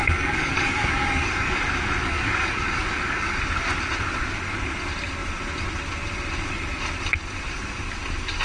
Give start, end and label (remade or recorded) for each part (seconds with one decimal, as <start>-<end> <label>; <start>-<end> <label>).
0.0-1.6 remade; 1.6-2.0 recorded; 2.0-3.4 remade; 3.4-8.4 recorded